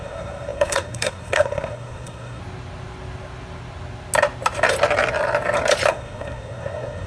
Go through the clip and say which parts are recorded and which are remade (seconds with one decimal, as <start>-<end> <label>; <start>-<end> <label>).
0.0-2.4 remade; 2.4-5.9 recorded; 5.9-7.1 remade